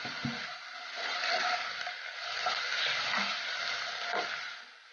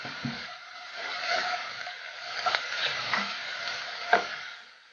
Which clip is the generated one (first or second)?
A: second